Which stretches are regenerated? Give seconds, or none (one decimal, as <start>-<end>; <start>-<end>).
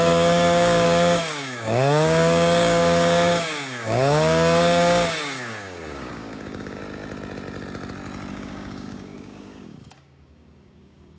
0.0-6.8; 8.3-11.2